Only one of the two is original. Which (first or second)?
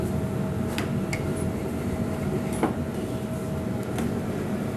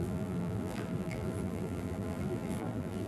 first